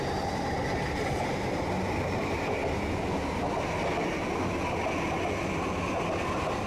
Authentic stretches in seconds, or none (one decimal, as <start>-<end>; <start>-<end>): 2.6-6.7